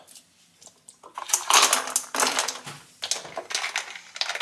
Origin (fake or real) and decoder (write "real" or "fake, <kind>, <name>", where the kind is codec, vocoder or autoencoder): real